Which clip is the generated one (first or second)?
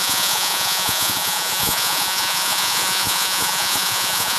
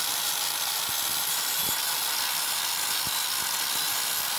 first